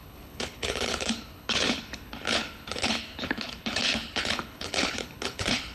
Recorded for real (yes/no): no